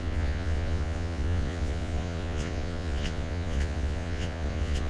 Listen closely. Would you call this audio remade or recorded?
remade